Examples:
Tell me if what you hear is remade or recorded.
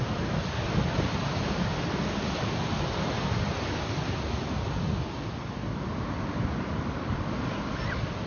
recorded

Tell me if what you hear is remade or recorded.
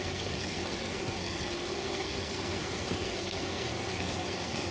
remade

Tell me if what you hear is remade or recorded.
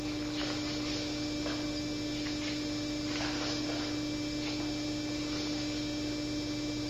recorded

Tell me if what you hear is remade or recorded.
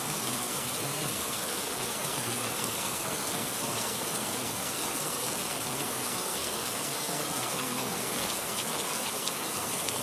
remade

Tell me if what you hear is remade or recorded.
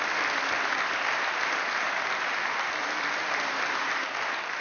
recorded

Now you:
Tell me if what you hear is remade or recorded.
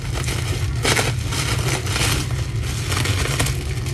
recorded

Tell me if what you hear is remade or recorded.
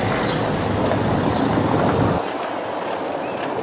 recorded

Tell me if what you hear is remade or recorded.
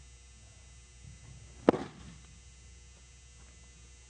recorded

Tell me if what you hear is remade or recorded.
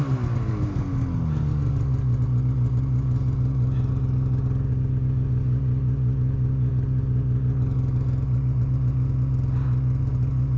recorded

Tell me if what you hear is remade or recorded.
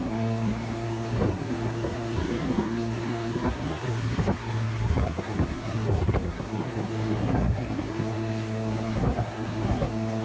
remade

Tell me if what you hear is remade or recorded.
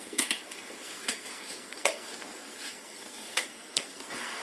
remade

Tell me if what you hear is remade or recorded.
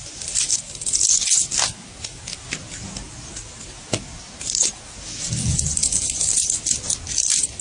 recorded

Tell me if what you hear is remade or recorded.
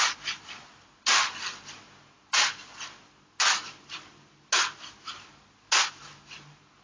recorded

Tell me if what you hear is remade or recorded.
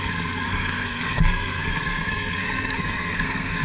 remade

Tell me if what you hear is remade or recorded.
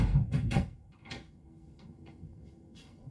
remade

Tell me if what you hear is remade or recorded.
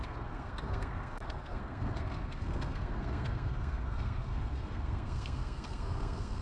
remade